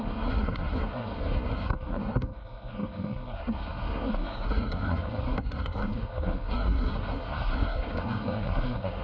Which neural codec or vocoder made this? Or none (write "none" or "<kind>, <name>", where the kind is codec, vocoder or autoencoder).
codec, SNAC